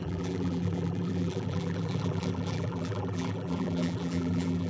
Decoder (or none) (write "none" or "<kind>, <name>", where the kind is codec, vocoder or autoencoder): vocoder, BigVGAN v2